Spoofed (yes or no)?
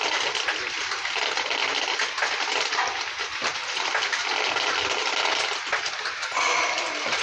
no